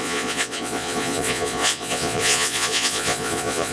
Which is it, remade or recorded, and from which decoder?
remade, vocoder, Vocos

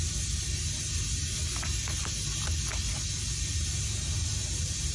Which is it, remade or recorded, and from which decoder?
recorded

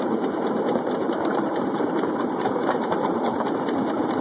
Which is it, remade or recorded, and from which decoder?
remade, vocoder, BigVGAN v2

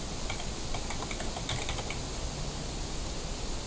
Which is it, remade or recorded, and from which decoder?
recorded